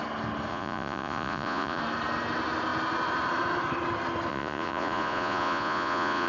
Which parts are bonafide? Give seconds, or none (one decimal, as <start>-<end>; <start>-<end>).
0.0-0.5; 1.8-4.3